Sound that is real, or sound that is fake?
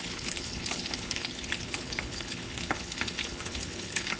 fake